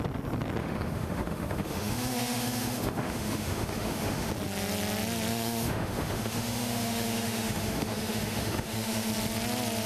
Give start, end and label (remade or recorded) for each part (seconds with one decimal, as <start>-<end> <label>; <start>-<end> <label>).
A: 0.0-0.6 recorded; 0.6-4.3 remade; 4.3-5.3 recorded; 5.3-9.1 remade; 9.1-9.9 recorded